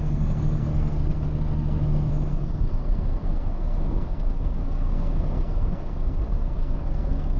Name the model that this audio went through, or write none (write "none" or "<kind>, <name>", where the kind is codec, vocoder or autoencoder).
codec, SNAC